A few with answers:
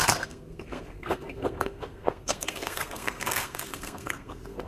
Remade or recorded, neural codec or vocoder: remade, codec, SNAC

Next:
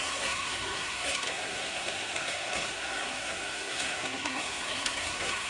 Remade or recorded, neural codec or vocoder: remade, codec, SNAC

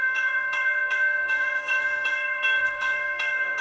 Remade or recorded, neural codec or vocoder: remade, codec, SNAC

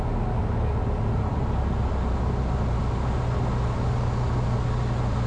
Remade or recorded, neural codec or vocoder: recorded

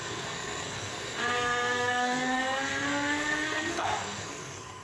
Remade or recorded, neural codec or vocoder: remade, codec, SNAC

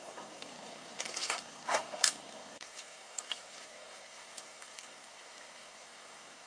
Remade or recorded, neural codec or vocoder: remade, codec, SNAC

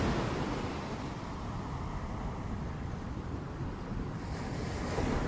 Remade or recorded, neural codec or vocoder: recorded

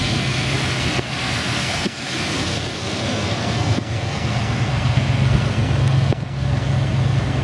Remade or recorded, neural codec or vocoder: remade, codec, SNAC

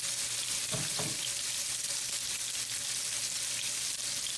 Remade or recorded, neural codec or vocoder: recorded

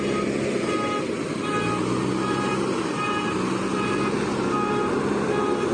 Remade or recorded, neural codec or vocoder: recorded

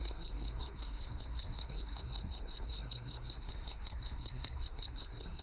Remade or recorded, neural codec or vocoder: remade, codec, SNAC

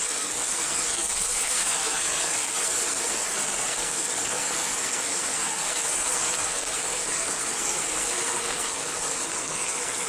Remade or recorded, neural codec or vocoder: remade, codec, SNAC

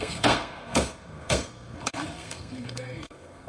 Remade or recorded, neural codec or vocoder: remade, codec, SNAC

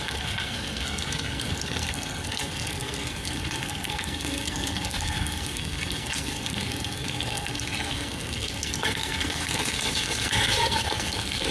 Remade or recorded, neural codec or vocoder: remade, codec, SNAC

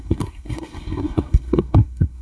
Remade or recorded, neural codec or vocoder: remade, codec, SNAC